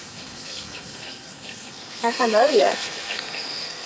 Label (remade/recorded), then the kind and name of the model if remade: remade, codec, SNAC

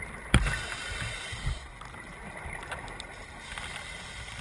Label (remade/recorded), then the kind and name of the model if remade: recorded